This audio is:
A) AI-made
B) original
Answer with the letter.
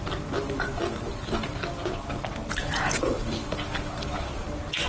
B